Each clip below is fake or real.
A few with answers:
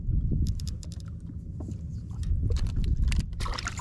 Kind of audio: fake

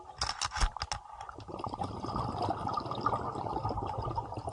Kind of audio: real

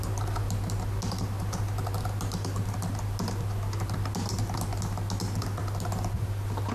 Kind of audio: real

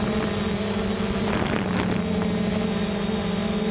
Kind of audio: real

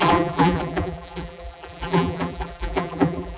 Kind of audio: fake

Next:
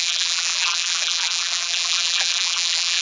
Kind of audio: fake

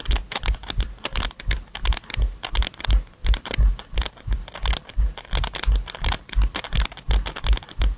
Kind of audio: real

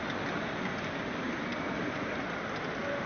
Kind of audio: real